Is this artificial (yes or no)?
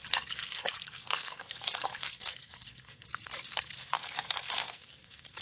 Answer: yes